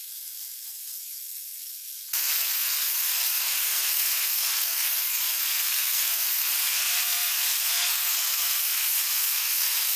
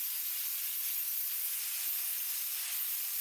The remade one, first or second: first